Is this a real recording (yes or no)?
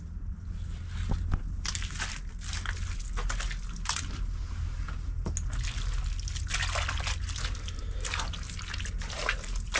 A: yes